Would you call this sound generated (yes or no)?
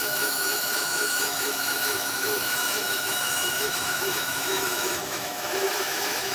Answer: yes